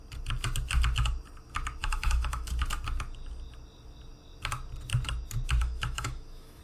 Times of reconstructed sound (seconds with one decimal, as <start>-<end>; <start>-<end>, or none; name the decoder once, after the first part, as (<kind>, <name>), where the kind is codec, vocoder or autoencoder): 1.8-2.5 (autoencoder, DAC-VAE); 5.6-6.6